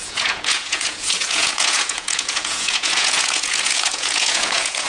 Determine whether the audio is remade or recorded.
remade